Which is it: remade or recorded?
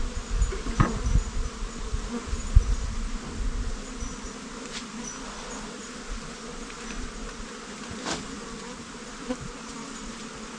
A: recorded